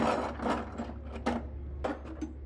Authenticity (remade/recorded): recorded